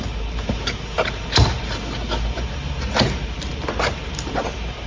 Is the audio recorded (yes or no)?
yes